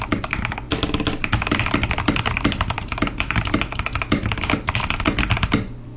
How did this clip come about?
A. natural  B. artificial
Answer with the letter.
A